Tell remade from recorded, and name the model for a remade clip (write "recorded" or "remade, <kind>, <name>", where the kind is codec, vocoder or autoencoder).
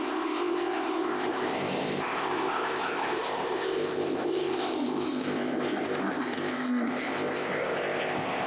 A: remade, codec, ZipCodec